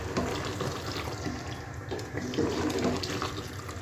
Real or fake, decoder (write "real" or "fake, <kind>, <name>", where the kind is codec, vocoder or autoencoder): real